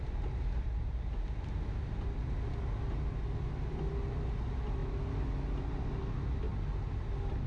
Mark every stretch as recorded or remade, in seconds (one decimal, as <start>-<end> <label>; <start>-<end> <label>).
0.0-7.5 recorded